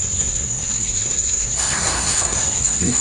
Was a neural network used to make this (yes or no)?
yes